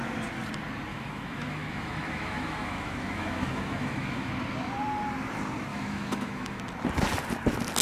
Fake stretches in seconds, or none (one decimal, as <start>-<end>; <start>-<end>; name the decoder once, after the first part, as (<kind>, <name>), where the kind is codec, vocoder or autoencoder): 0.9-4.3 (autoencoder, DAC-VAE); 5.7-6.6